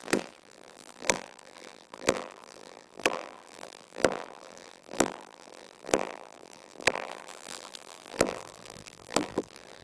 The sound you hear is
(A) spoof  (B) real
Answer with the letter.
A